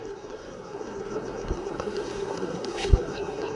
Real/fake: fake